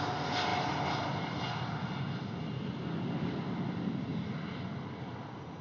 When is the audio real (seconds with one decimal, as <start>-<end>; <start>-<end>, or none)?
0.0-5.6